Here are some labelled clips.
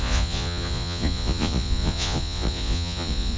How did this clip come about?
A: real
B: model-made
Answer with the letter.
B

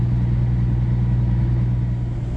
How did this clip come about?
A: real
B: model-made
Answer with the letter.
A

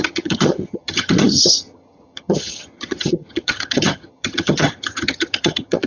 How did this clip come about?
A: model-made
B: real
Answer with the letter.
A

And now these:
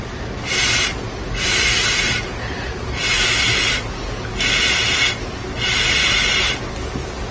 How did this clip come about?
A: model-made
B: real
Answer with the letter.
B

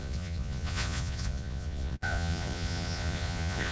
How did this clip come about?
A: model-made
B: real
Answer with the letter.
A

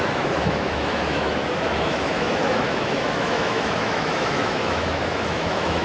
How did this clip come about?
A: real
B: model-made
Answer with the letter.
B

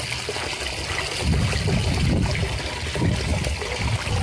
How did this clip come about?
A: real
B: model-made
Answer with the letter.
A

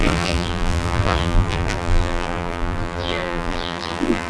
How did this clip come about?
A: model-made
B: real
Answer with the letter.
A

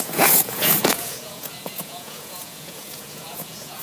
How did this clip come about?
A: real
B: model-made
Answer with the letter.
B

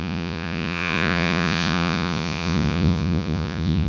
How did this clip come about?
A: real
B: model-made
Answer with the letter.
B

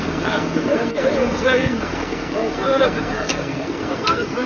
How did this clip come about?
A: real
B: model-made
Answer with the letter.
B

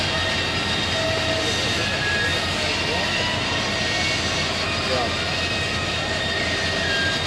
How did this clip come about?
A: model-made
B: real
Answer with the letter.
B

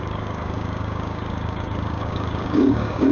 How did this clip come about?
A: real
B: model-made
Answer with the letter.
B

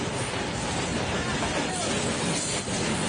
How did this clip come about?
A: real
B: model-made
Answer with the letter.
A